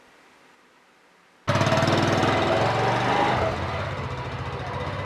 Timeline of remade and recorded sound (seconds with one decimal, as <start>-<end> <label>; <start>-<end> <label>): 0.0-5.1 recorded